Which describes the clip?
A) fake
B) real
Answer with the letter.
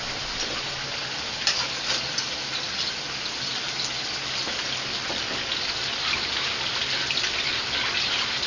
B